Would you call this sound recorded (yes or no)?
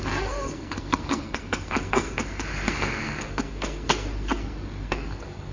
no